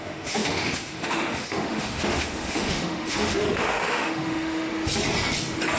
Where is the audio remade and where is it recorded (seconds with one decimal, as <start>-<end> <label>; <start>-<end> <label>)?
0.0-4.7 remade; 4.7-5.8 recorded